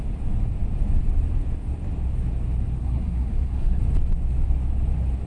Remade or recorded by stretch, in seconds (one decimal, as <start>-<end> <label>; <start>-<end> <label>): 0.0-2.8 recorded; 2.8-3.8 remade; 3.8-5.3 recorded